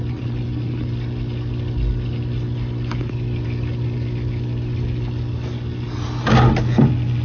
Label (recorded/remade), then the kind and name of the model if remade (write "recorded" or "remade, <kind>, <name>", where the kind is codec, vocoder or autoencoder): recorded